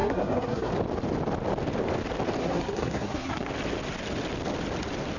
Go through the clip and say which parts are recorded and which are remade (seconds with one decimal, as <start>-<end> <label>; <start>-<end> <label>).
0.0-0.7 remade; 0.7-2.4 recorded; 2.4-3.5 remade; 3.5-5.2 recorded